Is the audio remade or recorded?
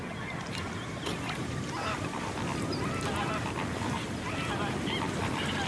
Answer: recorded